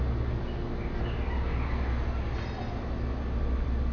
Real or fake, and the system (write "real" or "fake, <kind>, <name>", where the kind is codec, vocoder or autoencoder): real